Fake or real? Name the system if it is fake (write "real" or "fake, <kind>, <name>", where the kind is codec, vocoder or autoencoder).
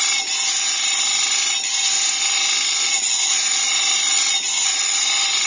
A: real